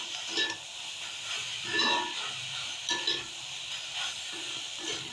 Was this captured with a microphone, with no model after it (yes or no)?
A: yes